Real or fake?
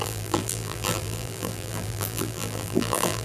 fake